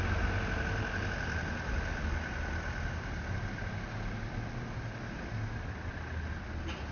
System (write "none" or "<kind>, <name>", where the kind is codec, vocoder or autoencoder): none